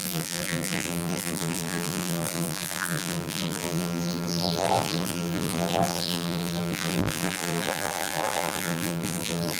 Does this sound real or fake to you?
fake